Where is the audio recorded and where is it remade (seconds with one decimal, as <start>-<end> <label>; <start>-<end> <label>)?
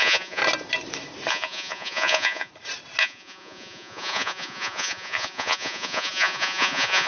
0.0-0.4 remade; 0.4-1.3 recorded; 1.3-2.5 remade; 2.5-3.0 recorded; 3.0-7.1 remade